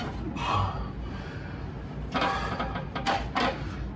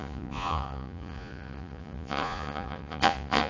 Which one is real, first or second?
first